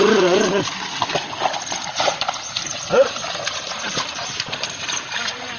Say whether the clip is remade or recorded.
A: remade